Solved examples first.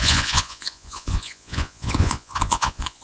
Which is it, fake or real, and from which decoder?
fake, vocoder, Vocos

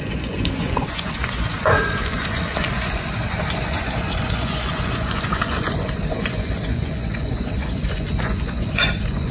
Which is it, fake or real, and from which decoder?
fake, vocoder, Vocos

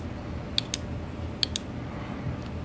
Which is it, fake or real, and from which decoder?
real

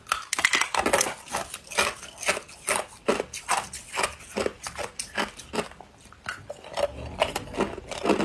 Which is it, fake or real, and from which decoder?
real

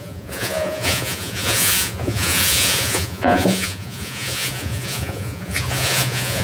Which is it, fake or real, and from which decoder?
fake, vocoder, Vocos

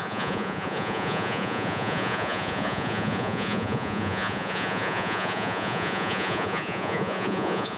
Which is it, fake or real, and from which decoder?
fake, vocoder, Vocos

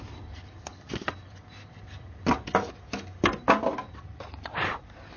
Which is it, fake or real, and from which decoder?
real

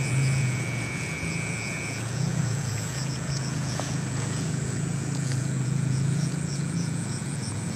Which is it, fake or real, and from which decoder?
fake, vocoder, Vocos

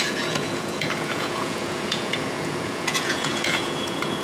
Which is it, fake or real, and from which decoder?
fake, vocoder, Vocos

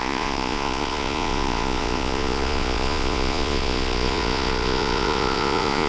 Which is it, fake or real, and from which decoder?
fake, vocoder, Vocos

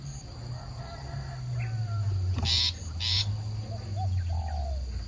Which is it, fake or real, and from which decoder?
real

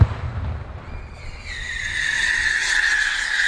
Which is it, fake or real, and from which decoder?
real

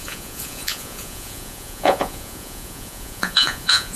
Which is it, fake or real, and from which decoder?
fake, vocoder, Vocos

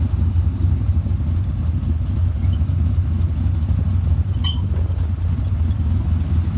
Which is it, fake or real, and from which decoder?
real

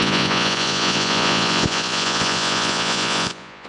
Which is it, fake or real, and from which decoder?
fake, vocoder, Vocos